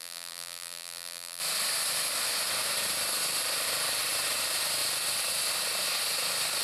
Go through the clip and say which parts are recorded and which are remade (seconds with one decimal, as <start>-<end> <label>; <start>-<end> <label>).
0.0-1.4 remade; 1.4-6.6 recorded